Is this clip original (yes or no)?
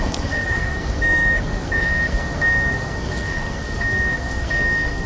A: no